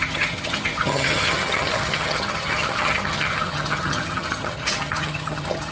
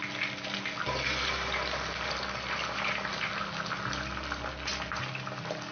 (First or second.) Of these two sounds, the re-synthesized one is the first